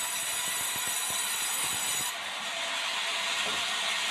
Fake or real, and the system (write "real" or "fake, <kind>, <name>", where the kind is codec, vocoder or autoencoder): real